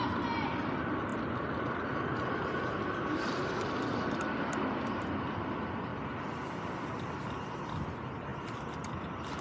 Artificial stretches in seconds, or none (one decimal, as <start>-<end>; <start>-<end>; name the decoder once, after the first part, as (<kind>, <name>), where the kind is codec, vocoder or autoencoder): none

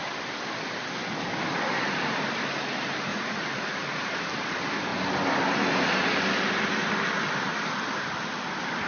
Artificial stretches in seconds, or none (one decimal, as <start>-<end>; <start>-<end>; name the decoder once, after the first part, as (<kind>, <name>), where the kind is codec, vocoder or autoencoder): 3.1-4.1 (vocoder, Vocos)

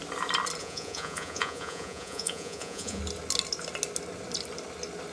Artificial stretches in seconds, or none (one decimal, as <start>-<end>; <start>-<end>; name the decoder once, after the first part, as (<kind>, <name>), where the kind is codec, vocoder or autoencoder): 0.6-3.0 (vocoder, Vocos)